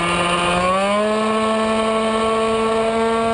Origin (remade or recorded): recorded